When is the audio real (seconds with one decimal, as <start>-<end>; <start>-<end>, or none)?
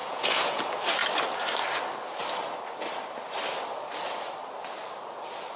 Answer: 0.6-5.6